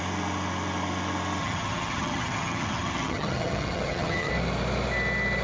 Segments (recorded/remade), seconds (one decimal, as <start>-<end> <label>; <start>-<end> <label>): 0.0-1.4 recorded; 1.4-4.3 remade; 4.3-5.4 recorded